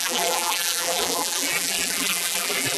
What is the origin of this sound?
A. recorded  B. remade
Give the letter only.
B